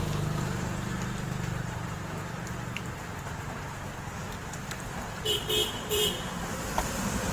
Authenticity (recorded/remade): remade